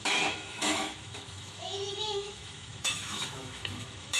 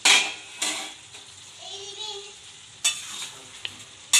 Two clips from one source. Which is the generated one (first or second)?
first